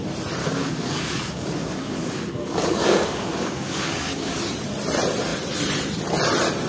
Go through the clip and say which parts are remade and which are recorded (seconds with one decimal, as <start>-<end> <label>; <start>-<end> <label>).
0.0-0.4 recorded; 0.4-4.4 remade; 4.4-6.7 recorded